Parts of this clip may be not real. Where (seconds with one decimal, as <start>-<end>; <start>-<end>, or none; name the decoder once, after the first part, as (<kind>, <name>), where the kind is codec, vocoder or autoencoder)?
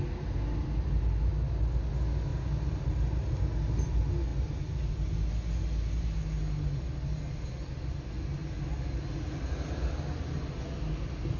none